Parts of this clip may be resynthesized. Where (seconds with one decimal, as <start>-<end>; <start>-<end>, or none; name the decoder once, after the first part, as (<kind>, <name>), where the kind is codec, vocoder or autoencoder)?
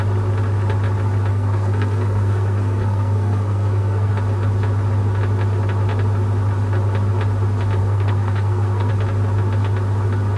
1.3-4.1 (codec, SNAC); 7.8-8.9